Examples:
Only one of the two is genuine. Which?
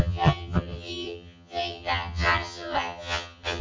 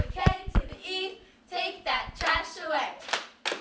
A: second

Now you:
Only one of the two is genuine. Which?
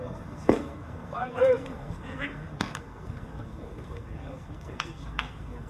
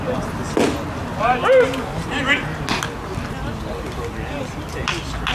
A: second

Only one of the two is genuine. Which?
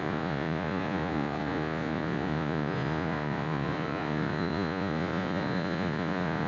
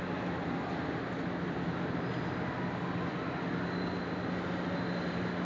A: second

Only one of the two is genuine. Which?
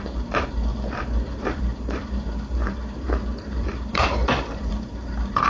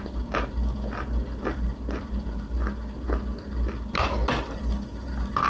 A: second